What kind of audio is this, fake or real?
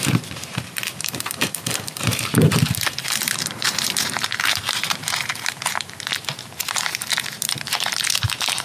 fake